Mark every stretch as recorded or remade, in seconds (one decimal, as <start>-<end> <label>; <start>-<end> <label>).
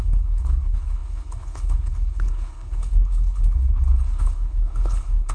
0.0-5.3 remade